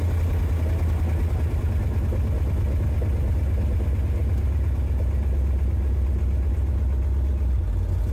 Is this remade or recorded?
recorded